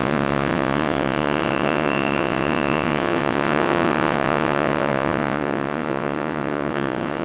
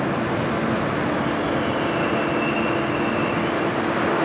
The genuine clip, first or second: second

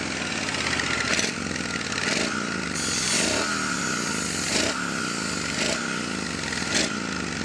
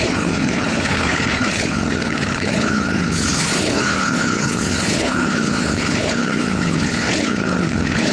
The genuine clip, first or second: first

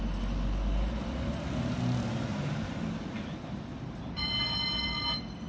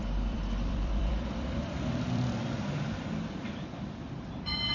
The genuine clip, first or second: first